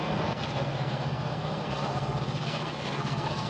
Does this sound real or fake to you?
fake